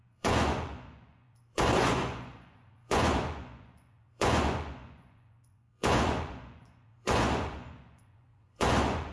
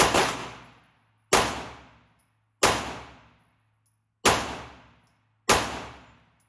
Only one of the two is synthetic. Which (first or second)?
first